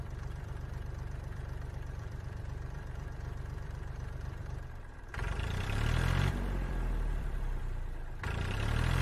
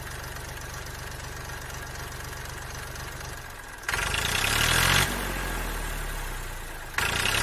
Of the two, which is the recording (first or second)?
second